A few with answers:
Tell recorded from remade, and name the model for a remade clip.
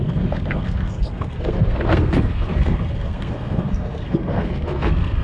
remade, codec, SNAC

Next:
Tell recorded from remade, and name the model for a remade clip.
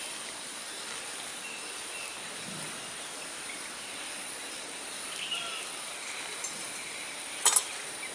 recorded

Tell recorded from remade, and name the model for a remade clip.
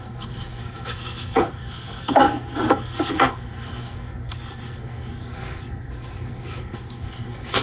remade, codec, SNAC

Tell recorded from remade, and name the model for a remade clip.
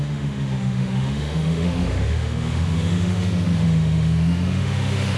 remade, autoencoder, DAC-VAE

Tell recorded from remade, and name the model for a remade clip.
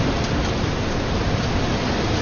recorded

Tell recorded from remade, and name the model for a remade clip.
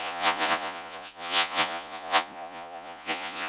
remade, vocoder, Vocos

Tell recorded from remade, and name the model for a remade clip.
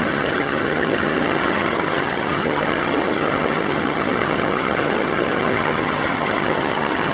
remade, vocoder, HiFi-GAN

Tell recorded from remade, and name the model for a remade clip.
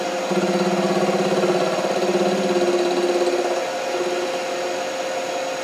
recorded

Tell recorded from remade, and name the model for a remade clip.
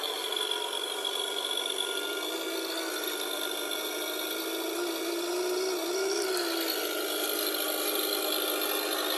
recorded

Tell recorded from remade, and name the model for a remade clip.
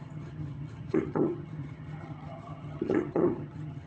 remade, vocoder, HiFi-GAN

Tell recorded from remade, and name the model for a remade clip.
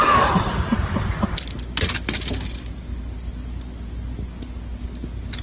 recorded